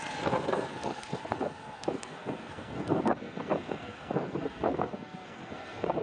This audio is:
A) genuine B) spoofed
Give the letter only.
B